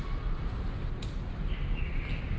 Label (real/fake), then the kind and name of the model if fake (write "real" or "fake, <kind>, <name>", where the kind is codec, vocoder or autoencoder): real